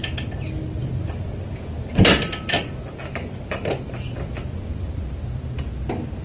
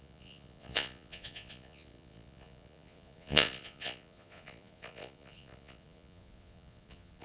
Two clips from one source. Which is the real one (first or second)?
first